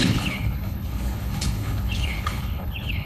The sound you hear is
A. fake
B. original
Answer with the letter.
A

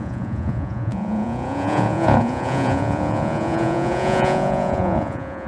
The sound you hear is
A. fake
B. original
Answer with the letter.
A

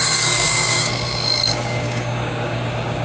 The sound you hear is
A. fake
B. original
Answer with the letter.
A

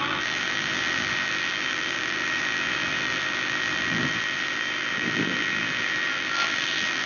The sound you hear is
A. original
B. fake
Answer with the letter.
B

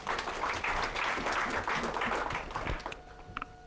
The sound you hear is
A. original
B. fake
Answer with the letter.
A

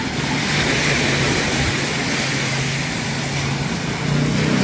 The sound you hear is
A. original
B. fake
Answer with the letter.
A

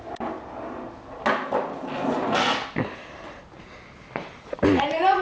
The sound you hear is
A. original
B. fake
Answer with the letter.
A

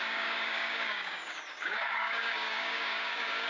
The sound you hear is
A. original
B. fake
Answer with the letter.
B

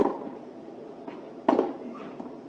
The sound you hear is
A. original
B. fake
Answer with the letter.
A